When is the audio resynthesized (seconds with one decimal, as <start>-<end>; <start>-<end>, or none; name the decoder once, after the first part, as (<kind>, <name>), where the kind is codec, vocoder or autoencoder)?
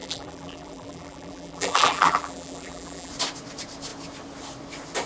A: 0.0-3.1 (vocoder, BigVGAN v2)